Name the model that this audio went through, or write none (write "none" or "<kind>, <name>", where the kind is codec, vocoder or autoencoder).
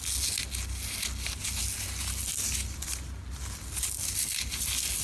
none